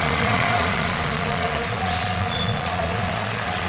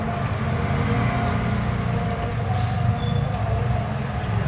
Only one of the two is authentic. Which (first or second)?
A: second